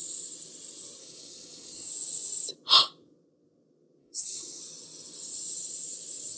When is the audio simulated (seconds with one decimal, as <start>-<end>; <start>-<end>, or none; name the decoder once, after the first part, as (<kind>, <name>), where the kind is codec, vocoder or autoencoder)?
1.0-1.9 (codec, DAC); 4.0-4.6

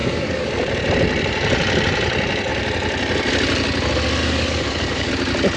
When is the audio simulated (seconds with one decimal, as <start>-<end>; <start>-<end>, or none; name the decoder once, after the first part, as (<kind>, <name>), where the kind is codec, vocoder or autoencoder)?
0.0-0.5 (codec, DAC); 4.2-5.1

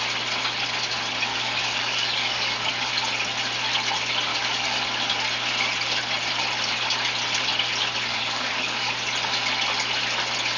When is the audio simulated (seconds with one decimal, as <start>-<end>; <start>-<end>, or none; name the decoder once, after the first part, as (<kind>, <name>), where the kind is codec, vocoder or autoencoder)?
1.3-2.9 (codec, DAC); 4.3-4.8; 8.1-8.9

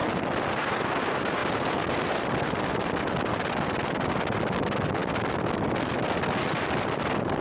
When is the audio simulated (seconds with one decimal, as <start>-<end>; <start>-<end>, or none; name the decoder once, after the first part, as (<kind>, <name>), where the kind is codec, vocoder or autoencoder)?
none